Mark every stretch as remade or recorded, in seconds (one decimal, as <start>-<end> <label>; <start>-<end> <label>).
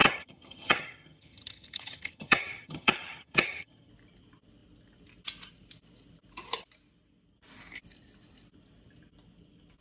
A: 0.0-3.9 remade; 3.9-9.8 recorded